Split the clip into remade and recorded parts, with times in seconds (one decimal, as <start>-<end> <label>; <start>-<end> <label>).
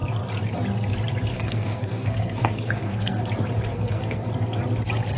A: 0.0-1.3 recorded; 1.3-3.2 remade; 3.2-3.7 recorded; 3.7-4.3 remade; 4.3-5.2 recorded